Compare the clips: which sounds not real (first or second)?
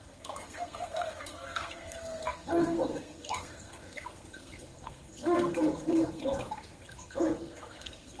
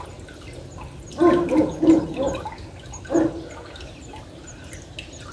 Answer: first